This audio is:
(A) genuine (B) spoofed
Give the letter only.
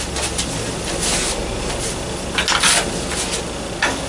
A